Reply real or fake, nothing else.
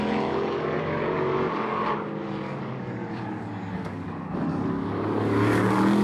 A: fake